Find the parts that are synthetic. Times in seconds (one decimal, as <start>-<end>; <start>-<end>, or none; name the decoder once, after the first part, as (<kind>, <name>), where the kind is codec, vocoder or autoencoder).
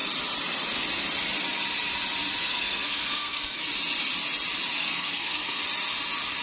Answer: 2.4-3.7 (codec, SNAC); 4.8-5.6